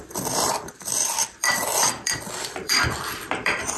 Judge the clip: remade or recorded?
remade